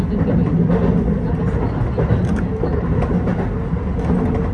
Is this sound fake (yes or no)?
no